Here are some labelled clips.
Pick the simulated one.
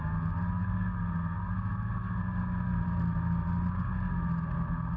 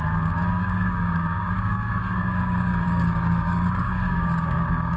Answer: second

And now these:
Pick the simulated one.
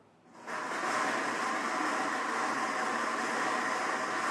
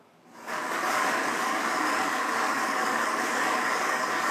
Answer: second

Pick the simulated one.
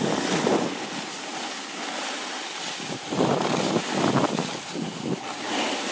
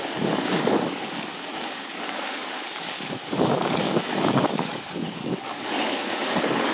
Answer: second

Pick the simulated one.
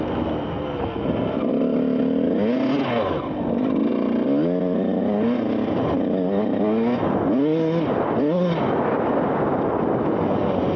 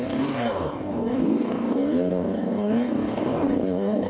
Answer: second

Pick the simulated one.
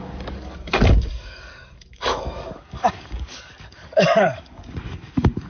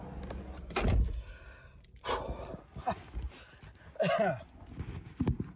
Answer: first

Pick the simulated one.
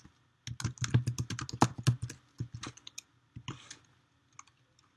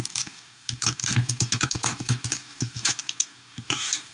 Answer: second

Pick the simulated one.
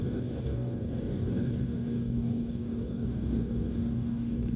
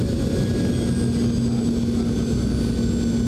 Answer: first